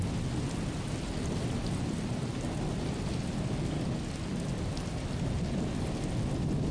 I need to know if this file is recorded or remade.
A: recorded